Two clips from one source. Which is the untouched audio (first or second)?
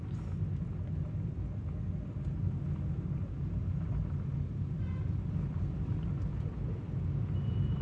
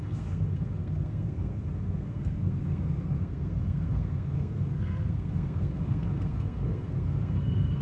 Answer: first